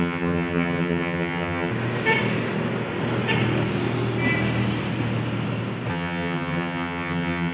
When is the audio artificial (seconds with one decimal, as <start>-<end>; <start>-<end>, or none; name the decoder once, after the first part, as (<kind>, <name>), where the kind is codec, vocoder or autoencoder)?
0.0-1.7 (vocoder, HiFi-GAN); 5.9-7.5